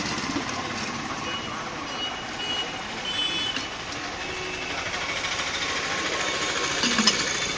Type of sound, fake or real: real